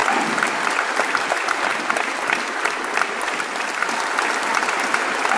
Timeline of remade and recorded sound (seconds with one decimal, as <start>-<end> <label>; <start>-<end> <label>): 0.0-5.4 recorded